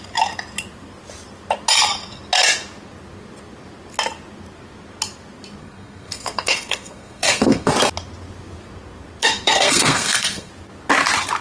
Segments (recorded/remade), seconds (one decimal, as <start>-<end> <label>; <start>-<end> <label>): 0.0-5.6 recorded; 5.6-7.7 remade; 7.7-9.2 recorded; 9.2-10.5 remade; 10.5-11.4 recorded